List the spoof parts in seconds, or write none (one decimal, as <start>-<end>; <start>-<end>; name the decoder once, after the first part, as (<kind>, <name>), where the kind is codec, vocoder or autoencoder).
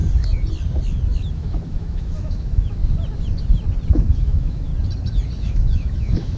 1.3-2.8 (autoencoder, DAC-VAE); 3.9-4.7; 5.4-6.4